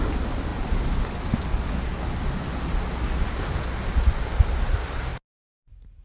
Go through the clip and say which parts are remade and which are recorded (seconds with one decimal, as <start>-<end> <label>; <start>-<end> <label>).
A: 0.0-6.0 recorded